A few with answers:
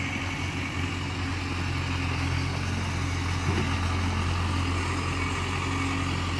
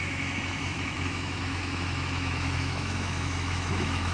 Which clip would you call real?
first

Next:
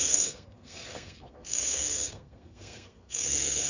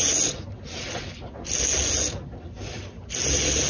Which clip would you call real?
second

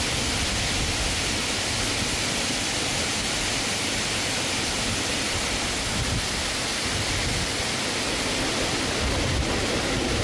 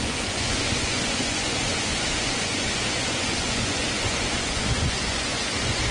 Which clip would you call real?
first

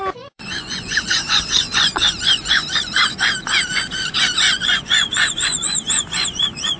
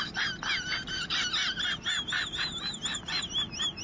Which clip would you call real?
second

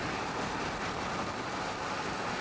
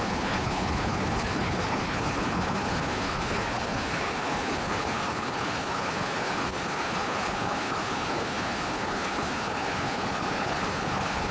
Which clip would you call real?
first